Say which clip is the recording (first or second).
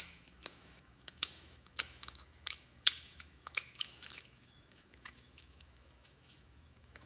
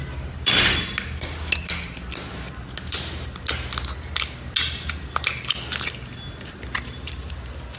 second